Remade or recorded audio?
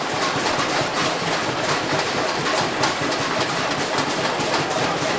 recorded